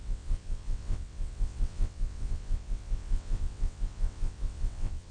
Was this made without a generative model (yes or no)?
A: no